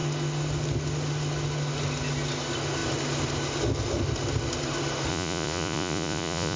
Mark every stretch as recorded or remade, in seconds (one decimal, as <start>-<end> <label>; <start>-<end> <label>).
0.0-5.1 recorded; 5.1-6.6 remade